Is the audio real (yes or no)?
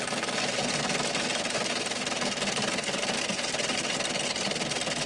yes